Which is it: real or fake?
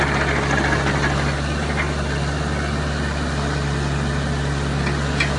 real